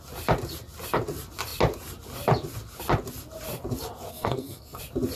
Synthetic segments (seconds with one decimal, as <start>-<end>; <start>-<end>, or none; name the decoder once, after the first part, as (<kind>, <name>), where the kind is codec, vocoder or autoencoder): 4.1-4.8 (codec, SNAC)